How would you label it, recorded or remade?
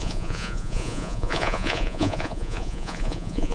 remade